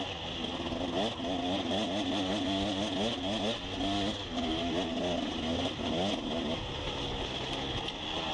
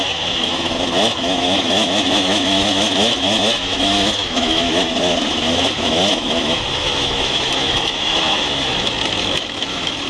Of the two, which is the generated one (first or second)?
second